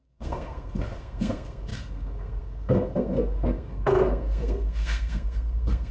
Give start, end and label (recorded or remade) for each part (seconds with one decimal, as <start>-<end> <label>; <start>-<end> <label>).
0.0-5.9 remade